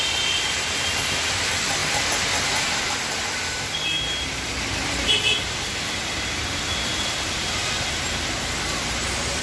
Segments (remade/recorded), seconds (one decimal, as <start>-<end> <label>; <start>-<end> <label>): 0.0-9.4 recorded